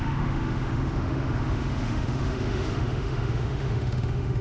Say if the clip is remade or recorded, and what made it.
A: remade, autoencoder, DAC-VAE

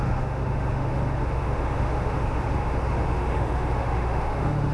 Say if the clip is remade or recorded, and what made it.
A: remade, autoencoder, DAC-VAE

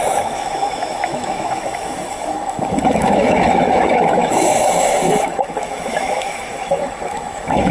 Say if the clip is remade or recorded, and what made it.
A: remade, autoencoder, DAC-VAE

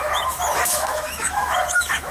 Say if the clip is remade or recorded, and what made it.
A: remade, autoencoder, DAC-VAE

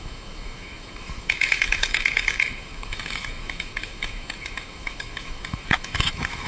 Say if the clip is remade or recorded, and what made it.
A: remade, autoencoder, DAC-VAE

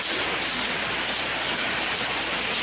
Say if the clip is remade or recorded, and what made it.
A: recorded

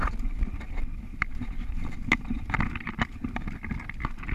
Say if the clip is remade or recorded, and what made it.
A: recorded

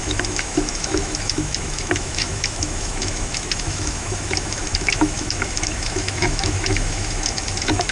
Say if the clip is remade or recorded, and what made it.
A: remade, autoencoder, DAC-VAE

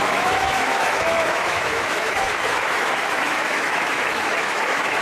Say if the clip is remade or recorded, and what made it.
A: remade, autoencoder, DAC-VAE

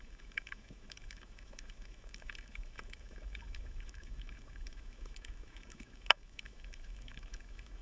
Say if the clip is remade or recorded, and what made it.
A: remade, autoencoder, DAC-VAE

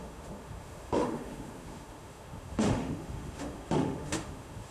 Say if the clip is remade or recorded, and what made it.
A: remade, autoencoder, DAC-VAE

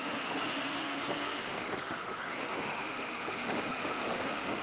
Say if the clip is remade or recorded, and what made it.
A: remade, autoencoder, DAC-VAE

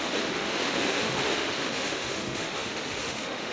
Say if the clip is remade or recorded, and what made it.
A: remade, autoencoder, DAC-VAE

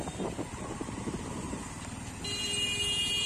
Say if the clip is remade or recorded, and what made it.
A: recorded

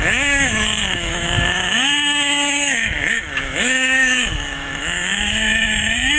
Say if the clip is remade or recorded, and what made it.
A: remade, autoencoder, DAC-VAE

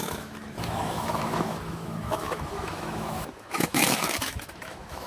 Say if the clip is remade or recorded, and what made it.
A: remade, autoencoder, DAC-VAE